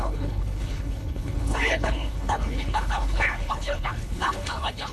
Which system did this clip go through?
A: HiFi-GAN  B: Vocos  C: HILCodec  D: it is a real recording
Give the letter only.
C